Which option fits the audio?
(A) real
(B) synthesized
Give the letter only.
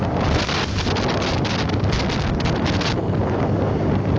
A